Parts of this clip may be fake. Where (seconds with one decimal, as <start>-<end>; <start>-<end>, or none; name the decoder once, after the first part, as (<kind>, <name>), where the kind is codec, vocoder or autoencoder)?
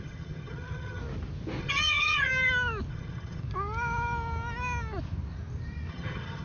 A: 0.0-1.0 (vocoder, HiFi-GAN); 1.6-2.3; 2.9-3.4; 5.9-6.4